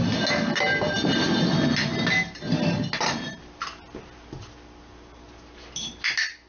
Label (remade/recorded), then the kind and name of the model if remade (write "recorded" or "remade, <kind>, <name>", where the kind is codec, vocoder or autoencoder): recorded